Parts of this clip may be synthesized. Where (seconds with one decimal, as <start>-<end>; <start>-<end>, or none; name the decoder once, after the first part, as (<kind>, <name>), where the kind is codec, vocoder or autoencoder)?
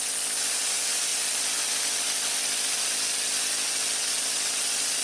none